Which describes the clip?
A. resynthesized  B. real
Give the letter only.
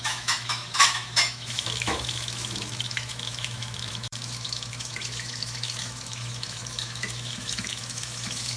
A